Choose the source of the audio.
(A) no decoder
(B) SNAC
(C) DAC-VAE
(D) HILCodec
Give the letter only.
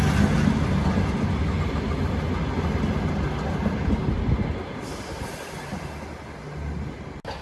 A